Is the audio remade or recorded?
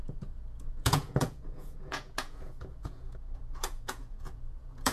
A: remade